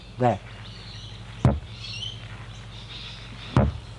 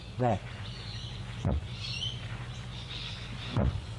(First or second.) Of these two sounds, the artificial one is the second